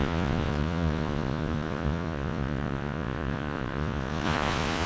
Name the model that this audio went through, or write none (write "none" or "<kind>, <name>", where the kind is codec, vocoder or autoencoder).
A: vocoder, Vocos